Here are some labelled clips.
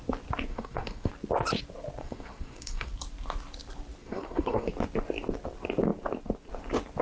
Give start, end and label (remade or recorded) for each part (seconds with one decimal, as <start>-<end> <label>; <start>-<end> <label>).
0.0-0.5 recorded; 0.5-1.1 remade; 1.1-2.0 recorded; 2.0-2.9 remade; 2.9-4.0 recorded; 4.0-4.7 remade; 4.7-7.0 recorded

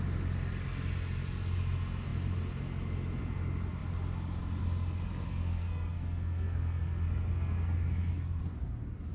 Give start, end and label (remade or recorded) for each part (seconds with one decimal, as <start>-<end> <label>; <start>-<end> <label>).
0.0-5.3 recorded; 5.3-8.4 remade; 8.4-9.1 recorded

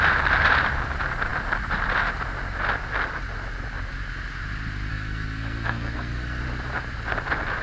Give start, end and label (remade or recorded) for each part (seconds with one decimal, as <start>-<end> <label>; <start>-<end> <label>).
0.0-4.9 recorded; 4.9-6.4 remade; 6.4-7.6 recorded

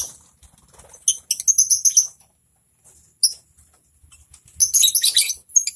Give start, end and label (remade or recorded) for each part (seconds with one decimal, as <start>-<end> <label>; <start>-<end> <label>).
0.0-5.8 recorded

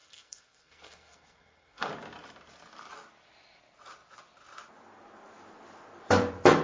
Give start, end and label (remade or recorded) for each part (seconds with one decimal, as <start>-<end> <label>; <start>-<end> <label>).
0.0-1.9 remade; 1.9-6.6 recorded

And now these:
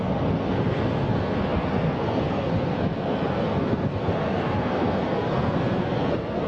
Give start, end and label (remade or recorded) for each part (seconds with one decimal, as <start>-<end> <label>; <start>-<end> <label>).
0.0-6.5 remade

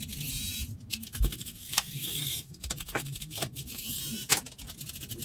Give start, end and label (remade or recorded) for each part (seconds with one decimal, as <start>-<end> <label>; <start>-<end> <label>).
0.0-0.9 recorded; 0.9-4.0 remade; 4.0-5.2 recorded

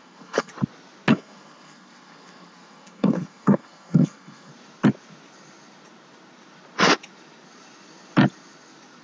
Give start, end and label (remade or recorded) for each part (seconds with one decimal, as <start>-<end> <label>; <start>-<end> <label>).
0.0-0.5 remade; 0.5-1.1 recorded; 1.1-4.5 remade; 4.5-9.0 recorded